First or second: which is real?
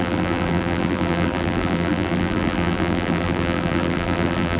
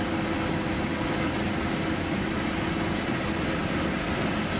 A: second